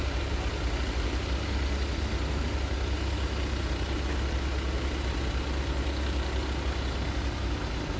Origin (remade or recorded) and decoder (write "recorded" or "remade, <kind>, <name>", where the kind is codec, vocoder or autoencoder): recorded